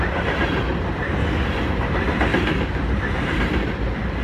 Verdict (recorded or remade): recorded